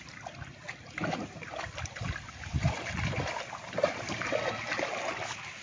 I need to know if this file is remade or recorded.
recorded